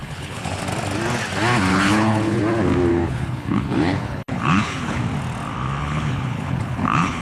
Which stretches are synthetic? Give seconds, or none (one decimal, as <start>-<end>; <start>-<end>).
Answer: 0.0-0.6; 1.7-2.4; 2.9-5.0; 5.8-7.2